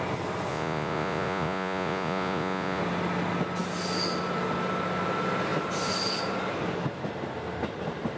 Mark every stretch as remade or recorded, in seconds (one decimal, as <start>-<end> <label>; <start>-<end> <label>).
0.0-0.5 recorded; 0.5-2.8 remade; 2.8-8.2 recorded